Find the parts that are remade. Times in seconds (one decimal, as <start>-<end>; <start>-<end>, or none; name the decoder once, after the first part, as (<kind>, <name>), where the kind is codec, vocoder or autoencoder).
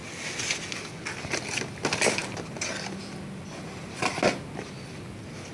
none